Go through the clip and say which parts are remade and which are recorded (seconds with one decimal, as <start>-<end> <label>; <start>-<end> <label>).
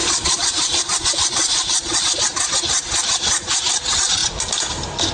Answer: 0.0-2.2 remade; 2.2-5.1 recorded